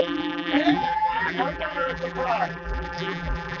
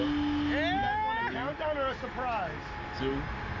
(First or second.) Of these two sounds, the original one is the second